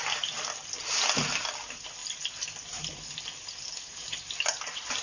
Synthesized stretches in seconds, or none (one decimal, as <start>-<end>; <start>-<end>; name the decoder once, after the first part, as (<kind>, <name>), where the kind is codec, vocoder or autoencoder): none